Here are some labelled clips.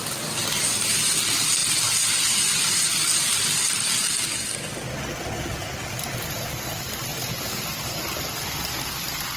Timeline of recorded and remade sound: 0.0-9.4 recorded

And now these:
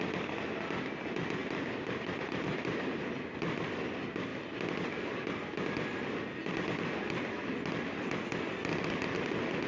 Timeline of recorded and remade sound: 0.0-1.4 recorded; 1.4-3.1 remade; 3.1-9.7 recorded

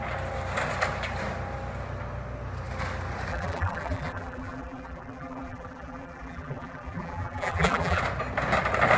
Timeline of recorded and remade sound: 0.0-3.3 recorded; 3.3-8.0 remade; 8.0-9.0 recorded

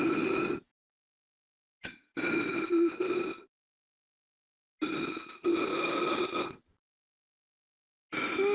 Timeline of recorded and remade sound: 0.0-1.7 recorded; 1.7-2.7 remade; 2.7-8.5 recorded

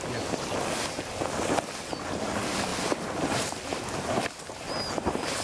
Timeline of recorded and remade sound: 0.0-2.7 recorded; 2.7-3.4 remade; 3.4-5.4 recorded